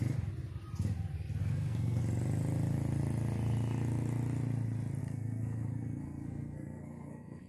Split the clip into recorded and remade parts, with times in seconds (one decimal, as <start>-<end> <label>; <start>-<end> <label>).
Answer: 0.0-1.4 recorded; 1.4-2.0 remade; 2.0-5.0 recorded; 5.0-7.5 remade